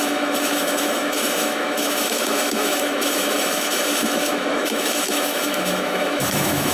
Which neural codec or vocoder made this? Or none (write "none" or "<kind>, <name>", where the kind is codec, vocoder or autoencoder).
autoencoder, DAC-VAE